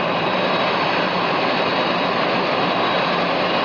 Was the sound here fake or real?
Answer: real